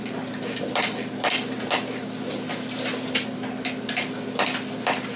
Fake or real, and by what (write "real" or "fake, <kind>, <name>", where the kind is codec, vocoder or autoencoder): real